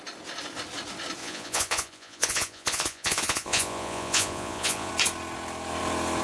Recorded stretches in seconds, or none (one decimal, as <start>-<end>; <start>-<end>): 0.0-1.2; 4.9-6.2

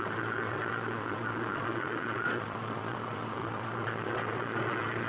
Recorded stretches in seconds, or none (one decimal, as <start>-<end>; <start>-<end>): none

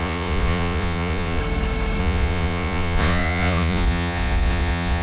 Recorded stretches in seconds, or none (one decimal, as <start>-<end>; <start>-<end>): 1.4-2.0

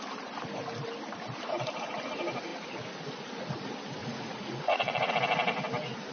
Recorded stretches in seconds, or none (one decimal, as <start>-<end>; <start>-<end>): 0.0-4.0; 5.1-6.1

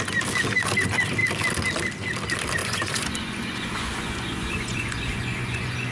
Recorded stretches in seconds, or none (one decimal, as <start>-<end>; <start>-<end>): 0.0-2.6

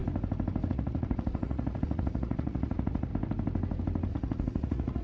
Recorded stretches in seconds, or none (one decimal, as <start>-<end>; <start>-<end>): 0.0-0.7; 3.1-4.1

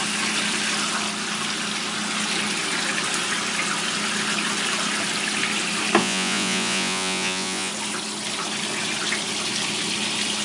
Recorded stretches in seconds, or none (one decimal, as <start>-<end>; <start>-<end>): 0.0-6.0; 7.7-10.4